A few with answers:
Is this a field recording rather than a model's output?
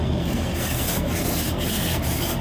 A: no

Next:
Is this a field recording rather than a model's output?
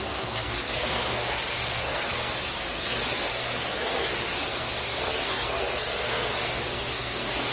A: no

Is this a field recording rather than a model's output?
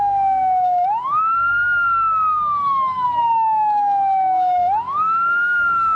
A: no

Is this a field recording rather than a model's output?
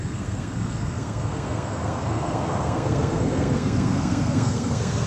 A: no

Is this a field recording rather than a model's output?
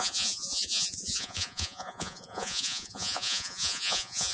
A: no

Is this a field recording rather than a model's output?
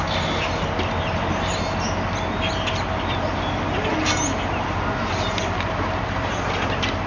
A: yes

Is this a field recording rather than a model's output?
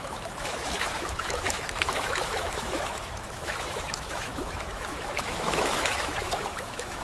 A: no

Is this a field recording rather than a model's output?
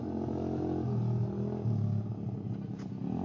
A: yes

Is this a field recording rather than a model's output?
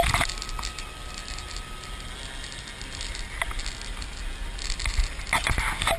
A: yes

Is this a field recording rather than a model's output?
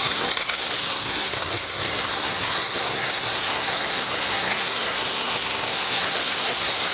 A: no